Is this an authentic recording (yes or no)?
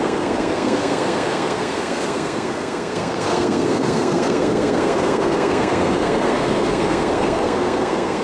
no